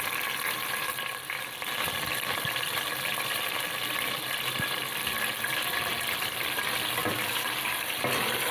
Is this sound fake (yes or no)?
no